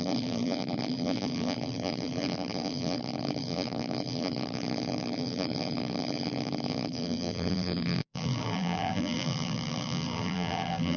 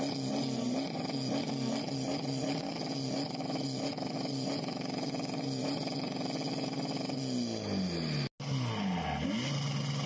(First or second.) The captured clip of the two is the second